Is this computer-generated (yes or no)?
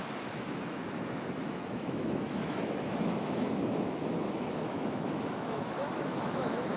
yes